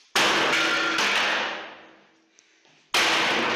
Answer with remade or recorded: recorded